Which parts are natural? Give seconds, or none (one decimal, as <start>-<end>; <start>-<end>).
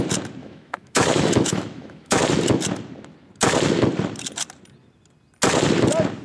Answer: 0.0-0.4; 2.2-6.2